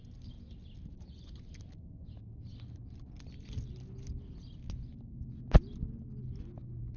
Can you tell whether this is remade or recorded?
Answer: recorded